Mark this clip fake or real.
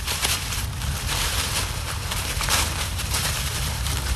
fake